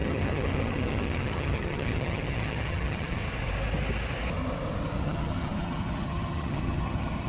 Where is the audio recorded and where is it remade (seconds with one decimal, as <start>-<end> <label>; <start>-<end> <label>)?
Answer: 0.0-3.2 remade; 3.2-5.0 recorded; 5.0-7.3 remade